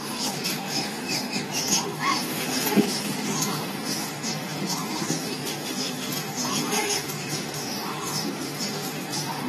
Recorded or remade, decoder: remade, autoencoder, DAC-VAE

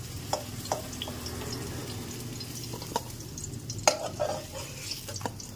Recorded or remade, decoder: recorded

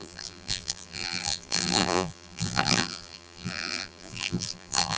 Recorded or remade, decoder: remade, vocoder, BigVGAN v2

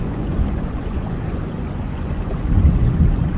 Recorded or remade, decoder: remade, vocoder, Vocos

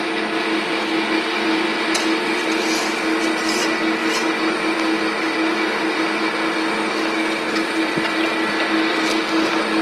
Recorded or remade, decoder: recorded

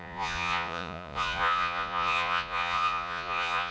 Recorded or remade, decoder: remade, vocoder, Vocos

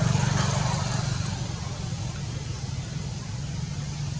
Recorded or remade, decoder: recorded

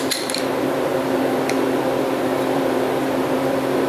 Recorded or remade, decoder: remade, vocoder, BigVGAN v2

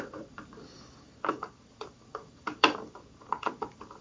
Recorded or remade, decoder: remade, vocoder, BigVGAN v2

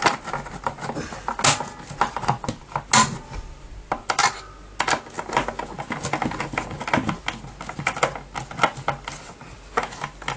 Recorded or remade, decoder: recorded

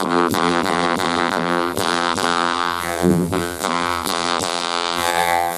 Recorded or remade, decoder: remade, vocoder, BigVGAN v2